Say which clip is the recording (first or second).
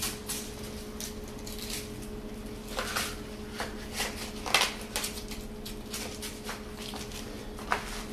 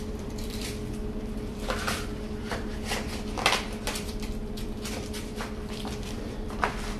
first